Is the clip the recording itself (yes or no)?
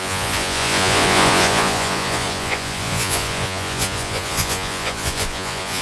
no